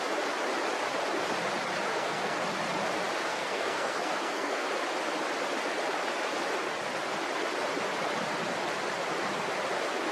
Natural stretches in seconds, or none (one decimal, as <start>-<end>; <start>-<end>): 0.0-1.9; 2.4-3.3; 4.7-10.1